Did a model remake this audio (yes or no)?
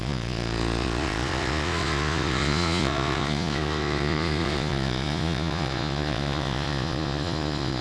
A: yes